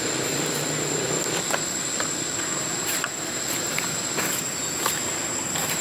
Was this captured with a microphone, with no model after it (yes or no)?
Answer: no